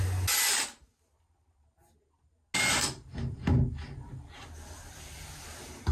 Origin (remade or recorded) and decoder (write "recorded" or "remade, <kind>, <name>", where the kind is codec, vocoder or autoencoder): recorded